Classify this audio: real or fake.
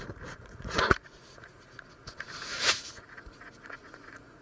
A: fake